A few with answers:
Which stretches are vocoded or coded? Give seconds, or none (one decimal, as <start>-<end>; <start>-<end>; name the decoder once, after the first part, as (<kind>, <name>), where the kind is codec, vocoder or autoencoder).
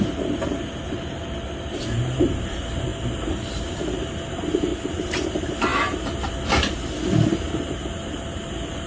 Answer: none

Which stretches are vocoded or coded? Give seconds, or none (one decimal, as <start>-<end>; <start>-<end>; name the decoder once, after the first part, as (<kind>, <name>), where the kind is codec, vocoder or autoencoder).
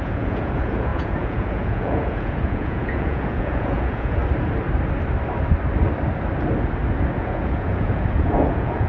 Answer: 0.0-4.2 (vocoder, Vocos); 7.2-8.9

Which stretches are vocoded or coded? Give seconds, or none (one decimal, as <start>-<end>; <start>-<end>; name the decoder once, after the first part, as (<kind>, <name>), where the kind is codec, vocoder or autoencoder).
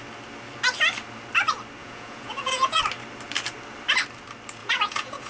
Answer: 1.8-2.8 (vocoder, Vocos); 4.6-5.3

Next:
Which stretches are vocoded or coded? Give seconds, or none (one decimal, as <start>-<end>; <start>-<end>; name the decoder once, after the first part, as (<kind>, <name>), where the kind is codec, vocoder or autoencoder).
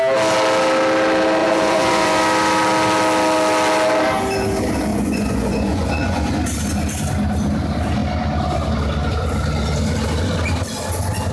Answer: 1.4-2.2 (vocoder, Vocos); 4.9-6.3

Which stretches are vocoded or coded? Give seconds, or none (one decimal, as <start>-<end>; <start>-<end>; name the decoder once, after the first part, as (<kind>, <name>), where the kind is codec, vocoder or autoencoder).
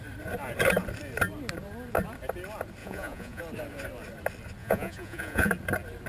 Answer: 2.8-3.4 (vocoder, Vocos); 4.6-5.5